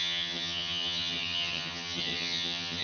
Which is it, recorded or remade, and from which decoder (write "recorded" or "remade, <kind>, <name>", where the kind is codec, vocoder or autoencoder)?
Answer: remade, vocoder, HiFi-GAN